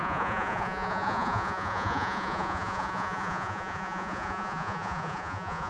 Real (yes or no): no